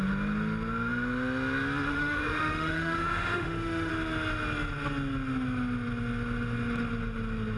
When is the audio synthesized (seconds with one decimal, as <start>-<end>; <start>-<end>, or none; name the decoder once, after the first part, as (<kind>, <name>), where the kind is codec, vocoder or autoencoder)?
1.9-3.9 (autoencoder, DAC-VAE)